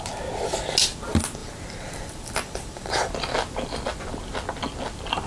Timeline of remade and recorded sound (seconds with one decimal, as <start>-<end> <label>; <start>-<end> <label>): 0.0-1.4 recorded; 1.4-3.1 remade; 3.1-5.3 recorded